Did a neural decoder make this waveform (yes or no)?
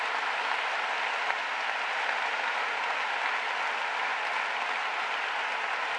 no